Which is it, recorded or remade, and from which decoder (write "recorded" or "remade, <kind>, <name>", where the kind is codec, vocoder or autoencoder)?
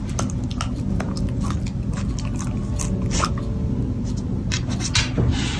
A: recorded